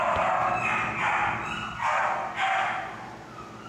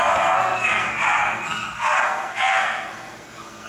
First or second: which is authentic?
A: first